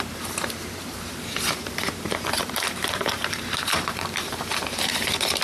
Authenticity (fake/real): fake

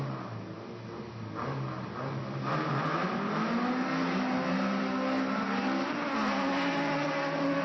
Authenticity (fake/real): real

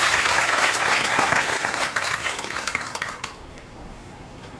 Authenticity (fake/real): fake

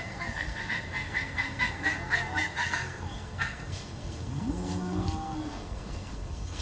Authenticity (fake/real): fake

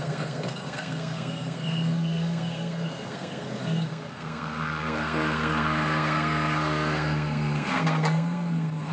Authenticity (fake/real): fake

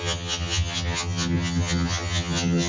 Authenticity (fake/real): fake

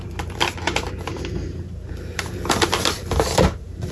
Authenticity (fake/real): fake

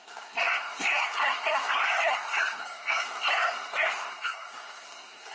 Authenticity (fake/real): fake